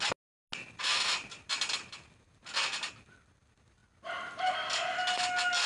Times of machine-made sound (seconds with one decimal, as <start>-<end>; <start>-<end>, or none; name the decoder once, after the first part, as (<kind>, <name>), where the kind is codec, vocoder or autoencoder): 3.8-5.0 (vocoder, BigVGAN v2)